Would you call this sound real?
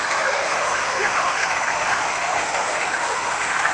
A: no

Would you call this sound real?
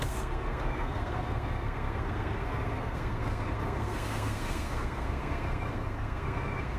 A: no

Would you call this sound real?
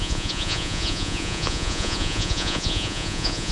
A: no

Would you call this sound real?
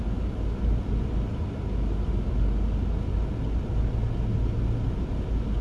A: yes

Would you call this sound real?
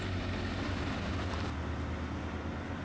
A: yes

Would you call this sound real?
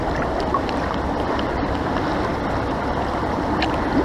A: yes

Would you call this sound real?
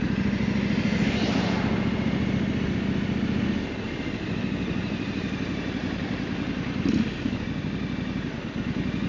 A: yes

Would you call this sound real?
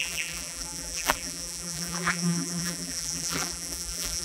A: no